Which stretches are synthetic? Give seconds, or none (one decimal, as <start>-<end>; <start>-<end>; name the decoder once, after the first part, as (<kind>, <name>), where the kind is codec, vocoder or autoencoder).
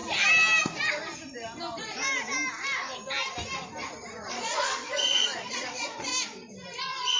4.3-6.1 (vocoder, Vocos); 6.8-7.2